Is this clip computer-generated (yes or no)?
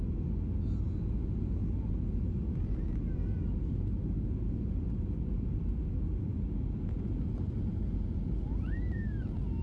no